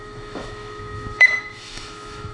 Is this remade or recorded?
remade